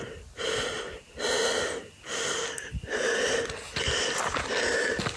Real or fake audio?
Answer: real